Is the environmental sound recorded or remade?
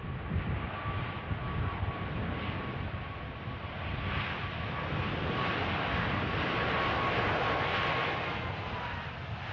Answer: recorded